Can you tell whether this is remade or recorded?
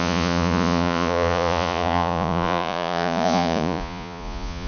remade